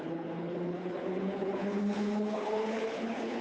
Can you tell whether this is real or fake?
fake